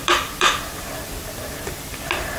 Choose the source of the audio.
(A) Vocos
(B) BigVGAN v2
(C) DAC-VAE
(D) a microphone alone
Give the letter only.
B